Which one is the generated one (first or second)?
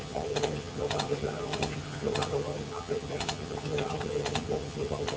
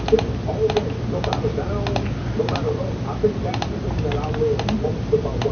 first